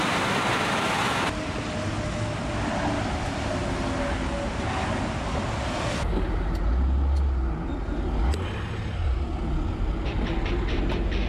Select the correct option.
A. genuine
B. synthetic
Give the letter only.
A